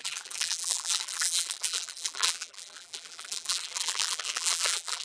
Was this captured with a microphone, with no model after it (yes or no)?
no